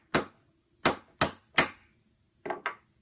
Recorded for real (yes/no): yes